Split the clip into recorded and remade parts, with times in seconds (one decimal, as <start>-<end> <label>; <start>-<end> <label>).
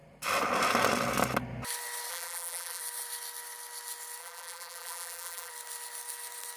0.0-2.1 recorded; 2.1-2.8 remade; 2.8-4.2 recorded; 4.2-5.5 remade; 5.5-6.6 recorded